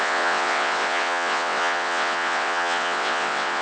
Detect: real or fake fake